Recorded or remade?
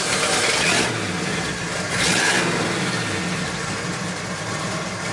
recorded